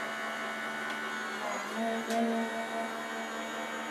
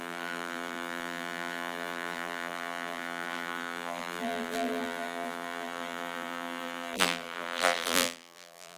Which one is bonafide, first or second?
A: first